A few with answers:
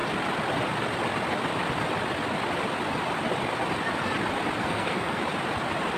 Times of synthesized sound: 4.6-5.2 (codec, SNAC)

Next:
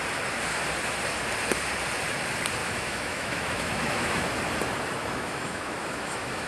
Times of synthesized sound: 2.6-4.4 (autoencoder, DAC-VAE); 5.0-6.5

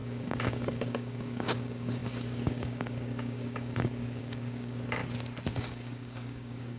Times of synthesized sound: 0.0-5.0 (codec, DAC); 5.5-6.8